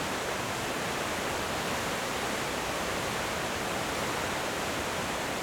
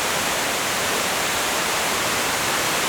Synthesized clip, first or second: second